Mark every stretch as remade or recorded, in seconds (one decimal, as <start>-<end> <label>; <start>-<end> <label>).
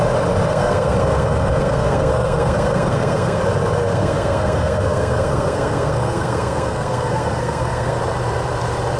0.0-0.5 recorded; 0.5-3.4 remade; 3.4-3.8 recorded; 3.8-8.0 remade; 8.0-9.0 recorded